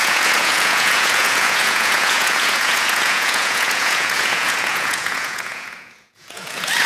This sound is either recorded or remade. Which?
remade